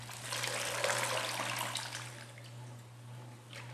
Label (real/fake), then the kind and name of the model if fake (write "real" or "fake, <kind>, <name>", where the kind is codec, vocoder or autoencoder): real